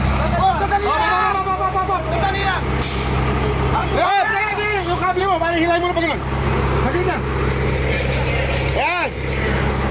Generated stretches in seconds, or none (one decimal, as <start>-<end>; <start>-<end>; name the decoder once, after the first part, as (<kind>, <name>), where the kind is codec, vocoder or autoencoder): 4.5-5.2 (codec, DAC)